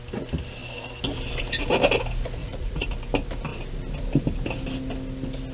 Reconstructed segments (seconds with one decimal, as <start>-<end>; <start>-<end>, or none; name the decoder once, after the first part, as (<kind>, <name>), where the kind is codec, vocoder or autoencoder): 2.4-2.9 (vocoder, Vocos)